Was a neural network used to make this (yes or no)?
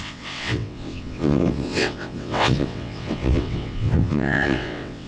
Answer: yes